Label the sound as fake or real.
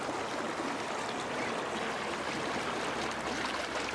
real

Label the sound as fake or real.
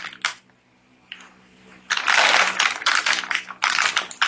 real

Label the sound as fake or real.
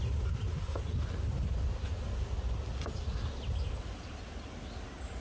real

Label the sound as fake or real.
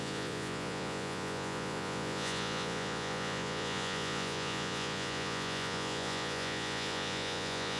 fake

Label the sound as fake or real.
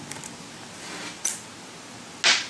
real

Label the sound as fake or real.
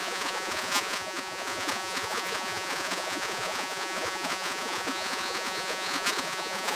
fake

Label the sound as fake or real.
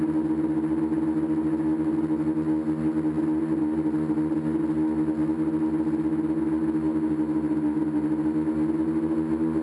real